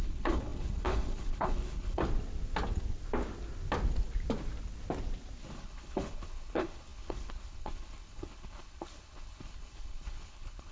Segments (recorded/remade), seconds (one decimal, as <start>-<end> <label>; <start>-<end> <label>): 0.0-2.0 remade; 2.0-5.4 recorded; 5.4-10.7 remade